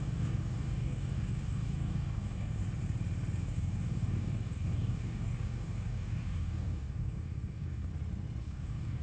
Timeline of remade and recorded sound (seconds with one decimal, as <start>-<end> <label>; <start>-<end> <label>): 0.0-2.6 remade; 2.6-3.4 recorded; 3.4-7.9 remade; 7.9-8.4 recorded; 8.4-9.0 remade